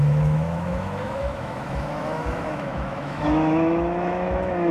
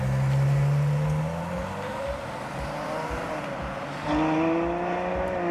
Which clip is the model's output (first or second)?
first